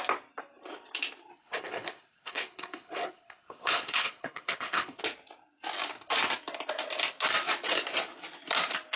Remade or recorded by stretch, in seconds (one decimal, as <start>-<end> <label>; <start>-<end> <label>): 0.0-1.3 recorded; 1.3-5.0 remade; 5.0-9.0 recorded